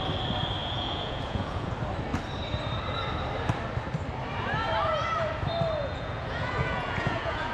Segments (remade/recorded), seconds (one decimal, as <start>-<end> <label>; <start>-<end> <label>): 0.0-0.6 recorded; 0.6-1.7 remade; 1.7-5.8 recorded; 5.8-7.5 remade